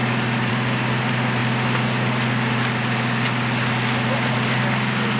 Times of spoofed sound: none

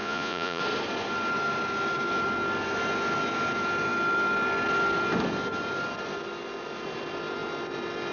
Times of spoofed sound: 0.0-0.6 (vocoder, Vocos)

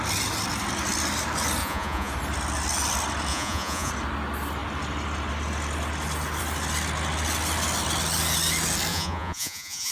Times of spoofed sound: 1.6-2.1 (vocoder, Vocos); 3.3-3.9; 8.9-9.9

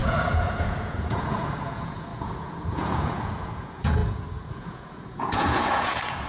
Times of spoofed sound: 0.0-6.3 (vocoder, Vocos)

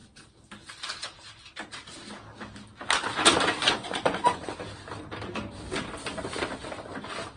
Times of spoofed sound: 3.8-4.5 (vocoder, Vocos)